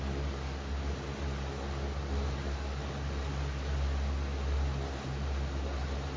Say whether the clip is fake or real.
real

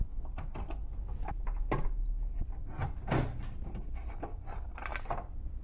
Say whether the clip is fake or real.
real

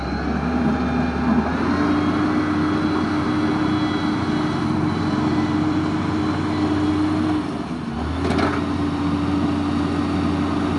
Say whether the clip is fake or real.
real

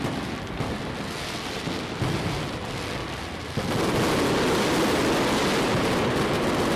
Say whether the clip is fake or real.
real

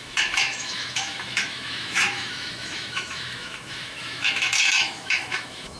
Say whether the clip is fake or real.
fake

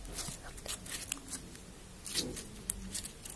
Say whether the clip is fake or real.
real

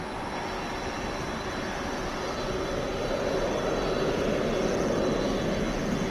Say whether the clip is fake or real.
real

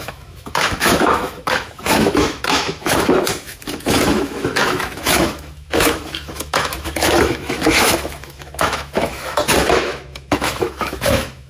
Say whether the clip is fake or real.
fake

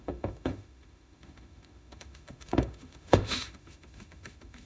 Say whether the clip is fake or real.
fake